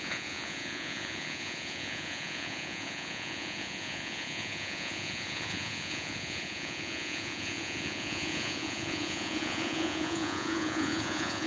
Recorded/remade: remade